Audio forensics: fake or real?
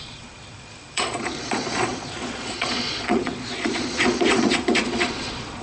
fake